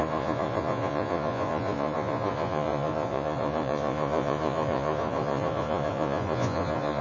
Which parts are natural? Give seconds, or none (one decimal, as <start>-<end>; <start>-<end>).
none